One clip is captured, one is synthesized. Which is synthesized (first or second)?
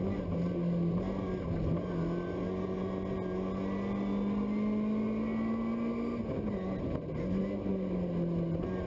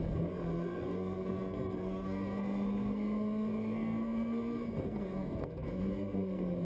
second